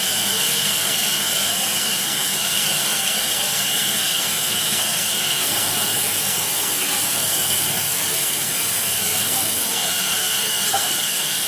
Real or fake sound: fake